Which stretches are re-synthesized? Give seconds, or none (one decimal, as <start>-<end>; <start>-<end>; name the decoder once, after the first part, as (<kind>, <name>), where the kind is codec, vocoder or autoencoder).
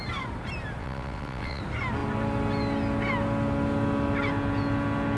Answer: 0.8-1.6 (vocoder, WaveNeXt)